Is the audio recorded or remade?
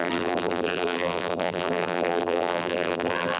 remade